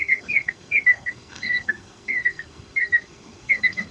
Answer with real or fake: fake